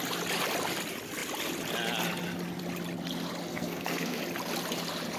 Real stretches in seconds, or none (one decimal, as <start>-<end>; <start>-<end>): 0.0-3.5; 4.2-5.2